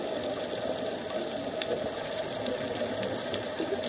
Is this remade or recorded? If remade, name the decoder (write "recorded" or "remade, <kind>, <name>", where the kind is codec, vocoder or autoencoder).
recorded